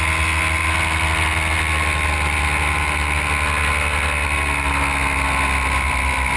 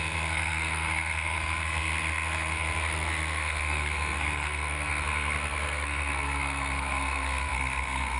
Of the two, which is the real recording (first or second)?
first